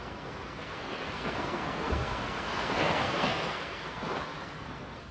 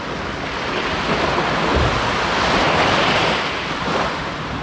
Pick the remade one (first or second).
first